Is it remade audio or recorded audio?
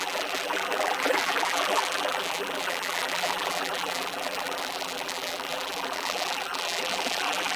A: remade